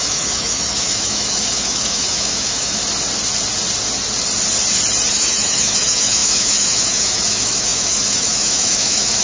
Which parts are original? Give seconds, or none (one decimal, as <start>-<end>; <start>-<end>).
2.8-5.1